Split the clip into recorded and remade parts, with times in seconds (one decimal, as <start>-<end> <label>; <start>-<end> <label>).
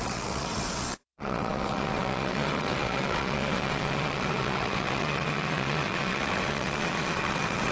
0.0-7.7 remade